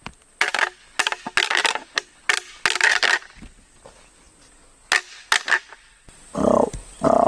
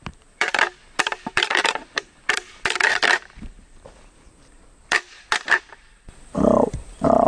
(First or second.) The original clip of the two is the first